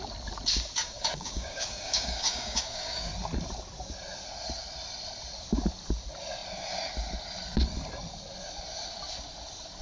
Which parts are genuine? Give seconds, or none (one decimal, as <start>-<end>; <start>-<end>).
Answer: 0.0-0.8; 3.1-9.8